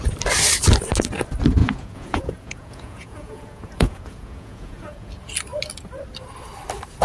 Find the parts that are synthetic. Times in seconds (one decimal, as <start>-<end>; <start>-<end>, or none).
1.6-5.1